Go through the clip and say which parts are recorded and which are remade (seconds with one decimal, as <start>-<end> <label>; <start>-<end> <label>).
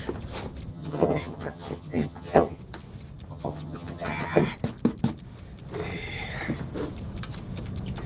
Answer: 0.0-0.7 recorded; 0.7-2.6 remade; 2.6-3.3 recorded; 3.3-4.4 remade; 4.4-8.1 recorded